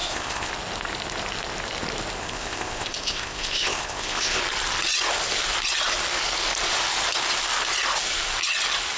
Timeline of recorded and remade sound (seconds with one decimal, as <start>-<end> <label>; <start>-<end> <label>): 0.0-0.5 remade; 0.5-2.2 recorded; 2.2-4.4 remade; 4.4-9.0 recorded